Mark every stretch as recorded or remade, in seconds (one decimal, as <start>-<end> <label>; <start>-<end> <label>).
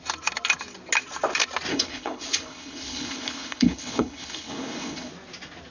0.0-1.7 recorded; 1.7-5.1 remade; 5.1-5.7 recorded